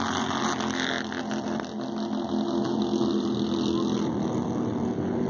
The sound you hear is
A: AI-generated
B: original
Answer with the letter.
B